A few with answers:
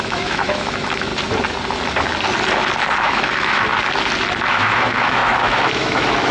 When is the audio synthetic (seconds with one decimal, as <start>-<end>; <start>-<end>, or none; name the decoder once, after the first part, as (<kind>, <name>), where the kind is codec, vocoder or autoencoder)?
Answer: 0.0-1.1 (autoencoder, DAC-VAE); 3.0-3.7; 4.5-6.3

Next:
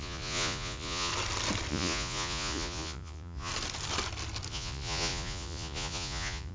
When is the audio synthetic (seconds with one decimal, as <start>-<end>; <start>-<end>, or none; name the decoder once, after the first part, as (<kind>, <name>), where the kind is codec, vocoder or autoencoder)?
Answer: 0.0-1.1 (vocoder, Vocos); 1.7-3.5; 4.5-6.5

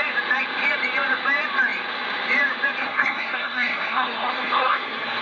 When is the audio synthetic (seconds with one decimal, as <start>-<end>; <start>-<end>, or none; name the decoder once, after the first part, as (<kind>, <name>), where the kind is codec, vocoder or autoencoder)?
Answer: 2.8-5.2 (codec, SNAC)

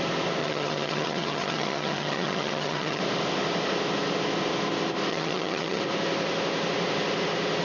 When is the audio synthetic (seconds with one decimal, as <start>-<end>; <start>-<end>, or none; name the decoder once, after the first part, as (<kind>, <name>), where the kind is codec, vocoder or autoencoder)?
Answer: 0.4-3.0 (vocoder, HiFi-GAN); 5.1-5.8

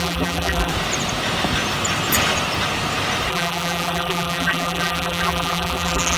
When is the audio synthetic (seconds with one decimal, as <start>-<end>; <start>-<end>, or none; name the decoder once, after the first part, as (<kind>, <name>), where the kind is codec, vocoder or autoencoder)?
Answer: 0.0-0.7 (vocoder, BigVGAN v2); 3.3-6.2

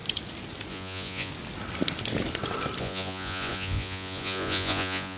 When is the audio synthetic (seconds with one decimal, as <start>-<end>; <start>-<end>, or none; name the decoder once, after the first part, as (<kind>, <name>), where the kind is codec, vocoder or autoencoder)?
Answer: 0.7-1.3 (vocoder, Vocos); 2.8-5.2